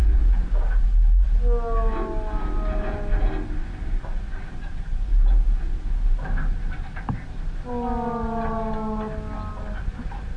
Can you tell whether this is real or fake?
real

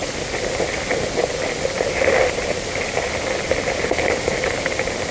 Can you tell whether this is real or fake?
real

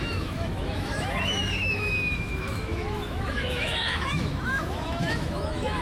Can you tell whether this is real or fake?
fake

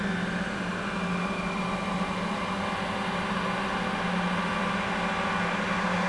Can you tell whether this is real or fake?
real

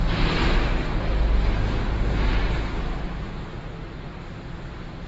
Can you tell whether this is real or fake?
real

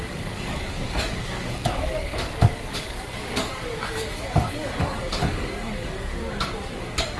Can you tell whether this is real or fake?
fake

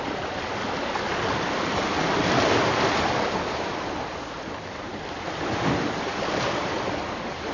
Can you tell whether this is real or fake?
real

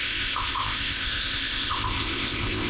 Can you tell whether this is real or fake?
fake